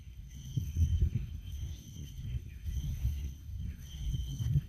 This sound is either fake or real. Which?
fake